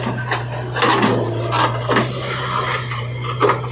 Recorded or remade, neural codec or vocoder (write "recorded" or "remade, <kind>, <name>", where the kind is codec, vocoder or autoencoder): recorded